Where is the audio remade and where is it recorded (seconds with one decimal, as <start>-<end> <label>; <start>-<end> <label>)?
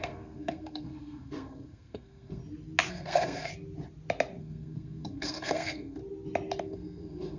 0.0-2.4 remade; 2.4-2.9 recorded; 2.9-3.5 remade; 3.5-4.4 recorded; 4.4-6.0 remade; 6.0-6.6 recorded; 6.6-7.4 remade